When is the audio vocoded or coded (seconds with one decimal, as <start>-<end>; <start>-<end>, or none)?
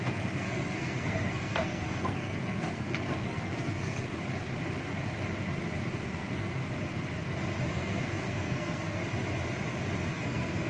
0.0-4.1; 6.0-6.6; 7.7-9.0; 10.1-10.7